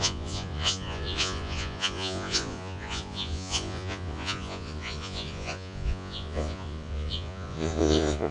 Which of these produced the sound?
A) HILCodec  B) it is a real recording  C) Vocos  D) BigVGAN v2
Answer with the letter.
C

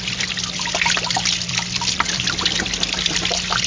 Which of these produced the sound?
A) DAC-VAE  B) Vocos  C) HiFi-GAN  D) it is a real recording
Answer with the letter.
D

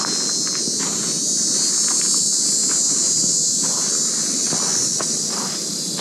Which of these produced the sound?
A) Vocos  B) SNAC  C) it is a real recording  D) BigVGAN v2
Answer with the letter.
D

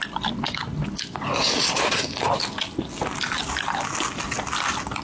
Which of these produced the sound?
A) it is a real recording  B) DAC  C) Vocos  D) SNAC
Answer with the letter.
A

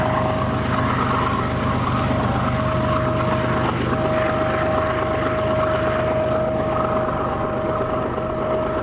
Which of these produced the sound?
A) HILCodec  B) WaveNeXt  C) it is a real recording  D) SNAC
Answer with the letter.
C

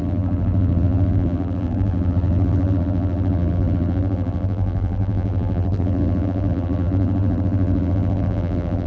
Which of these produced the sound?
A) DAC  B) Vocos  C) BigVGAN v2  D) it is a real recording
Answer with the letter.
C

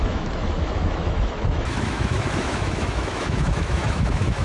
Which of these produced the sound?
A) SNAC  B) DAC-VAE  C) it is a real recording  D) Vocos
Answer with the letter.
B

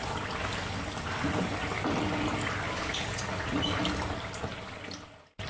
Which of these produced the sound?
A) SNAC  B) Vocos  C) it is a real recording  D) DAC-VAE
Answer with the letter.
C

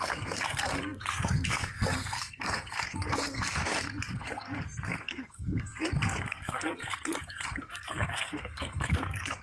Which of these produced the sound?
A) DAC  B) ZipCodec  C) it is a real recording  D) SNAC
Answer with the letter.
D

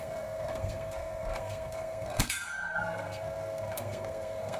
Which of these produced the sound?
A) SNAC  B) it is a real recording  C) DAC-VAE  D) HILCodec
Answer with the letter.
A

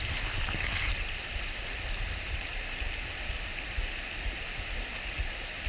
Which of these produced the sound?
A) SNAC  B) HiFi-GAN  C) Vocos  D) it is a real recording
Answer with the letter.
D